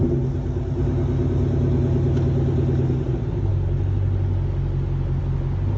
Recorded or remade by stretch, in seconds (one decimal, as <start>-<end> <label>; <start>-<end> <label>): 0.0-5.8 recorded